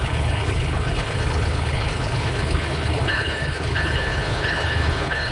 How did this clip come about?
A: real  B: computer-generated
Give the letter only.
B